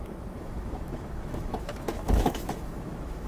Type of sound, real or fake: fake